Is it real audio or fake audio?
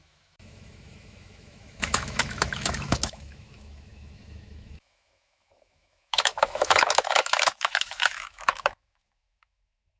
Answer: fake